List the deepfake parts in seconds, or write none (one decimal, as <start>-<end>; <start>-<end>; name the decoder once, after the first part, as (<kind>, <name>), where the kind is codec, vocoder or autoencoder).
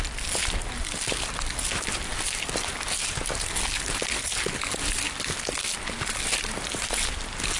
none